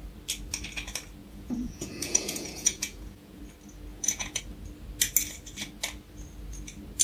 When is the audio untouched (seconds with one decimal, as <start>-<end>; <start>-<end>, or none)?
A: 0.0-1.2; 3.4-3.9; 4.4-7.0